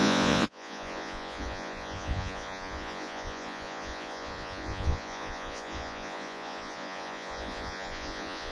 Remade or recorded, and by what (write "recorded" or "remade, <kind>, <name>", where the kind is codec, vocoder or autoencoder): remade, vocoder, Vocos